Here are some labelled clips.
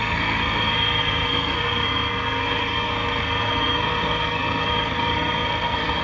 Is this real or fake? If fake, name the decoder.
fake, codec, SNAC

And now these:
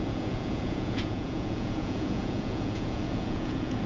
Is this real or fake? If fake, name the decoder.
fake, vocoder, Vocos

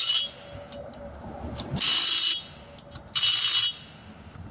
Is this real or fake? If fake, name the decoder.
real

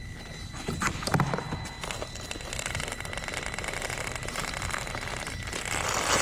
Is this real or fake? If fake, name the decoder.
real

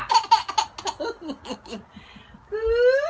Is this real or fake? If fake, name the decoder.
real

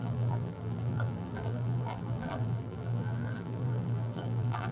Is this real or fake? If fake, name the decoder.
fake, vocoder, BigVGAN v2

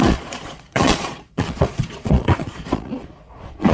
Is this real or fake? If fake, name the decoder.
fake, vocoder, Vocos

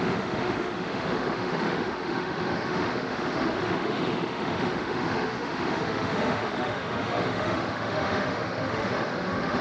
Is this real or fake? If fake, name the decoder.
fake, autoencoder, DAC-VAE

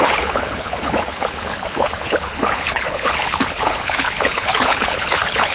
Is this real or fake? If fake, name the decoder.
fake, codec, HILCodec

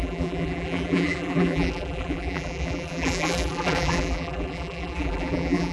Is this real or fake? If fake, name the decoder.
fake, vocoder, BigVGAN v2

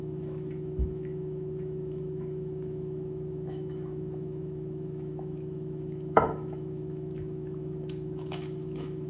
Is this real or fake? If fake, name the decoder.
fake, autoencoder, DAC-VAE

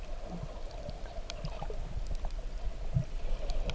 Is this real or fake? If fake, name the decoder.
real